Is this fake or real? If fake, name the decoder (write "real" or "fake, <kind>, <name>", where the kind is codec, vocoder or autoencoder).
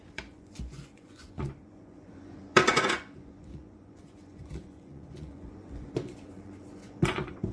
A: fake, vocoder, Vocos